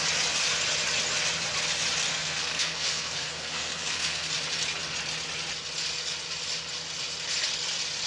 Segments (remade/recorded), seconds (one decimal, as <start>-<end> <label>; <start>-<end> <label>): 0.0-2.1 recorded; 2.1-4.3 remade; 4.3-8.1 recorded